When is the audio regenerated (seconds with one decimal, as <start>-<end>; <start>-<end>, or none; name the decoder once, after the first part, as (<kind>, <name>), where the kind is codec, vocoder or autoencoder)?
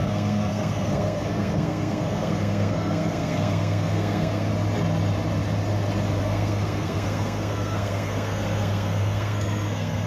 0.0-4.5 (codec, SNAC); 6.2-10.1